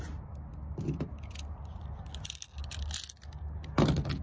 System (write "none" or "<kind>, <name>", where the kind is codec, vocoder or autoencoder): none